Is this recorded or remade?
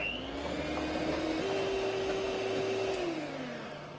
recorded